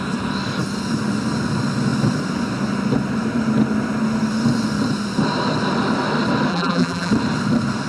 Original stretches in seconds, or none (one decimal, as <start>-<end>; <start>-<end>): 0.0-6.5; 7.1-7.9

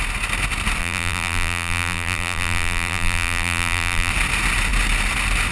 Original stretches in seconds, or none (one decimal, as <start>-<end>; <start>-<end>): 0.0-0.8; 4.1-5.5